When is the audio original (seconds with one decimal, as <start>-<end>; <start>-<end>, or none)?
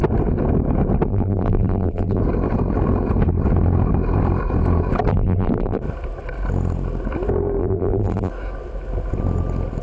0.0-1.1; 2.2-5.1; 5.8-7.6; 8.3-9.8